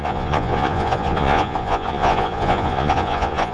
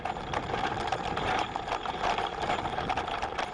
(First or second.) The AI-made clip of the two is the first